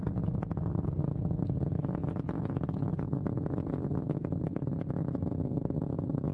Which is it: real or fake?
real